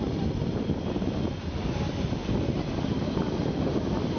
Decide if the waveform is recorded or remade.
recorded